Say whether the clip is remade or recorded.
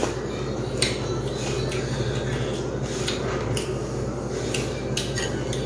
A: recorded